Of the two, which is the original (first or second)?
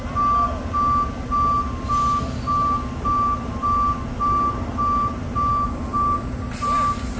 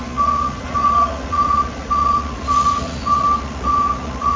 first